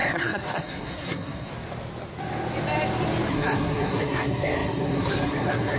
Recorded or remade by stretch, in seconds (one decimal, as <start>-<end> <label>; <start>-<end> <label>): 0.0-1.5 remade; 1.5-3.3 recorded; 3.3-5.8 remade